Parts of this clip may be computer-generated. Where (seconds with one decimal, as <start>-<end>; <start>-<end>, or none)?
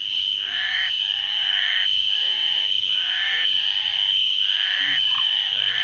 0.0-5.8